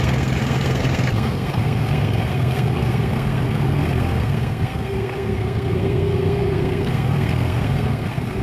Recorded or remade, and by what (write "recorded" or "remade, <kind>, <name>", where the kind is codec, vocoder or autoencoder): remade, codec, SNAC